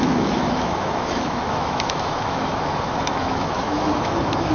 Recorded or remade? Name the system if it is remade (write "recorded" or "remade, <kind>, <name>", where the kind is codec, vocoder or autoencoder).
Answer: remade, autoencoder, DAC-VAE